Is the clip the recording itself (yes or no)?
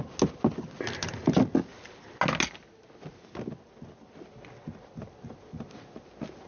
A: yes